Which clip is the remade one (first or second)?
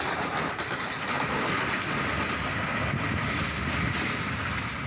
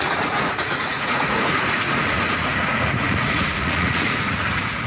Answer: second